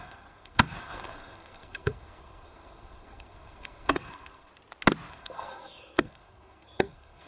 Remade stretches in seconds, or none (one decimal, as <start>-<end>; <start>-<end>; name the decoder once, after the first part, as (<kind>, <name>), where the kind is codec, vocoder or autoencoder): 0.0-4.5 (codec, SNAC); 5.1-7.3